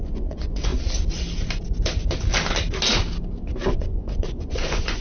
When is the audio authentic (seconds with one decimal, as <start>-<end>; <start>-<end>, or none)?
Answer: 0.7-3.7